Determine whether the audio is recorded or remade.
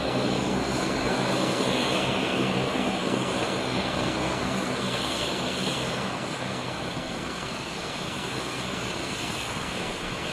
remade